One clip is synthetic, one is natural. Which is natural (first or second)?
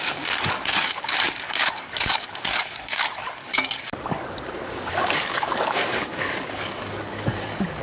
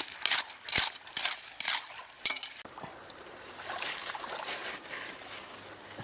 second